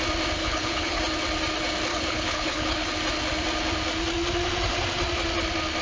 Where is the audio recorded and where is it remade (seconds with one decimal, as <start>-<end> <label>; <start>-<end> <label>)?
0.0-0.4 recorded; 0.4-1.0 remade; 1.0-1.9 recorded; 1.9-2.9 remade; 2.9-5.8 recorded